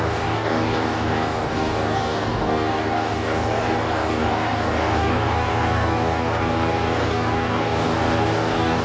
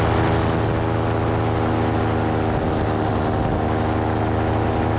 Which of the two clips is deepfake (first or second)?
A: first